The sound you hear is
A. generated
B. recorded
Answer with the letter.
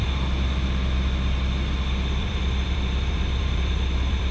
A